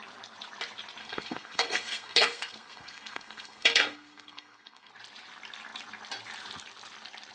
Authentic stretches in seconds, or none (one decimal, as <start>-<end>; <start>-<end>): 0.0-1.0; 4.9-7.3